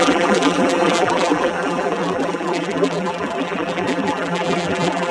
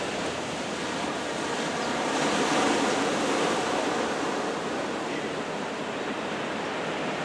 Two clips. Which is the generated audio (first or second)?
first